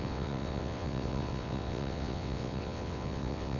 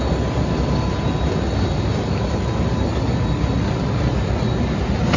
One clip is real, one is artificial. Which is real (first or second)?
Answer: second